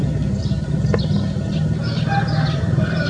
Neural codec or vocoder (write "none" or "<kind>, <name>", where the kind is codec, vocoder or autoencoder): none